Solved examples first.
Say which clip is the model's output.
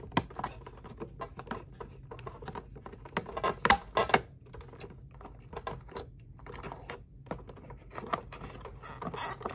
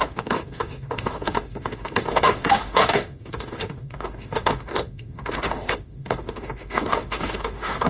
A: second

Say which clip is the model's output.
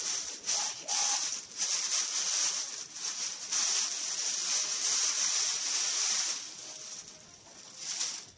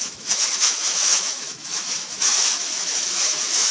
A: second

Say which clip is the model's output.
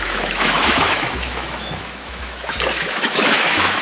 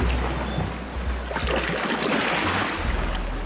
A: first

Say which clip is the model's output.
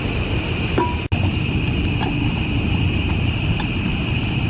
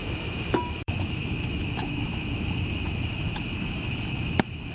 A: second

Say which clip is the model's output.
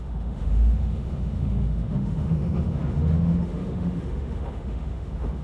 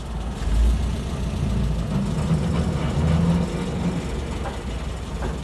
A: first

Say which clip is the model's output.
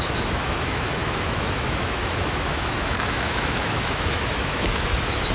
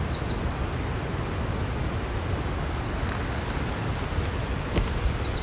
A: first